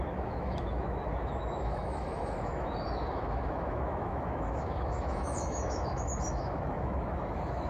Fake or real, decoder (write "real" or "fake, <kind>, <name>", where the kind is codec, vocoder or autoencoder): fake, autoencoder, DAC-VAE